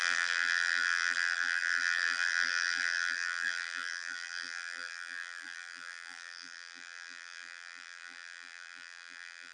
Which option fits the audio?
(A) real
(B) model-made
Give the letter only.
B